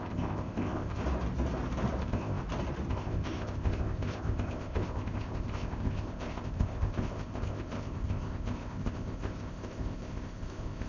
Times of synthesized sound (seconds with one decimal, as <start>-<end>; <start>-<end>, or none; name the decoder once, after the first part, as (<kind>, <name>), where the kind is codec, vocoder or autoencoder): 0.0-1.0 (codec, ZipCodec); 2.0-2.4; 2.9-10.9